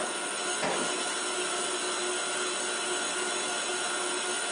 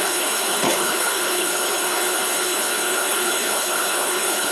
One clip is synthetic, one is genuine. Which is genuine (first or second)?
first